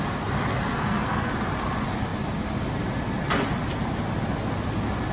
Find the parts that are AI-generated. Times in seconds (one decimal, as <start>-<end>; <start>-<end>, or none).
0.7-1.3